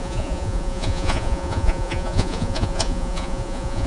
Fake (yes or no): yes